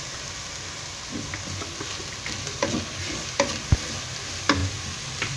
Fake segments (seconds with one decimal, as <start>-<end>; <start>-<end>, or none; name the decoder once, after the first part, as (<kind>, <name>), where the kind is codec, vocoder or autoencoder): 4.6-5.4 (vocoder, BigVGAN v2)